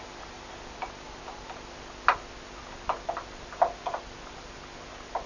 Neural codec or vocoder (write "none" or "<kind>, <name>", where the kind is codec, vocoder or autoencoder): none